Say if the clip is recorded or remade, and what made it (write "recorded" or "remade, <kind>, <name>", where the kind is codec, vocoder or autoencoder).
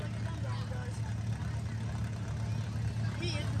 recorded